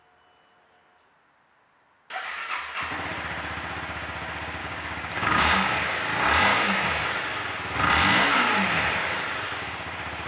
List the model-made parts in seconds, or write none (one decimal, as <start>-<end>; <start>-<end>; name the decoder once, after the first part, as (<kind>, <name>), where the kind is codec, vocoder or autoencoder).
4.6-5.7 (codec, DAC); 6.5-7.0